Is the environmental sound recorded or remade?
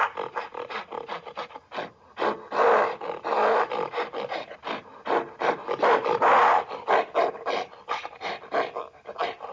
recorded